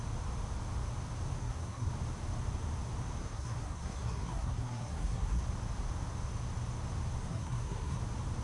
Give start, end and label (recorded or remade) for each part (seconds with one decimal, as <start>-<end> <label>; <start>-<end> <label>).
0.0-1.4 recorded; 1.4-1.9 remade; 1.9-3.2 recorded; 3.2-5.4 remade; 5.4-7.2 recorded; 7.2-8.0 remade; 8.0-8.4 recorded